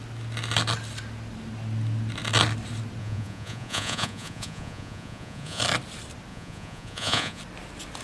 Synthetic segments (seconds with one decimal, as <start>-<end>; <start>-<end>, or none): 3.0-5.6; 6.3-7.4